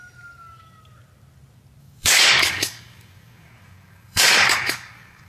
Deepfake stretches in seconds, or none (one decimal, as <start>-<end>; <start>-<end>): 1.8-5.3